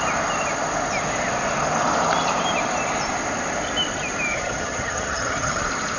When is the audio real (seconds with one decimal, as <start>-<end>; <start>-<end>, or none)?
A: 0.0-4.3; 5.6-6.0